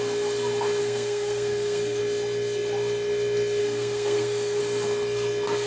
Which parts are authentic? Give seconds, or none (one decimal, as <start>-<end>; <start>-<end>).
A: 0.0-0.8; 2.0-3.6; 4.6-5.7